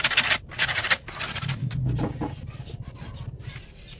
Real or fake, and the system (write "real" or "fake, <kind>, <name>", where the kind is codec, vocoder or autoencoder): real